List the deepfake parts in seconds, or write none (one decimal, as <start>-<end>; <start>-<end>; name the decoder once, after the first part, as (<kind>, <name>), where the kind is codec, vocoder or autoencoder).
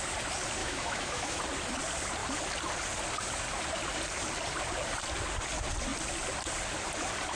0.6-1.4 (autoencoder, DAC-VAE)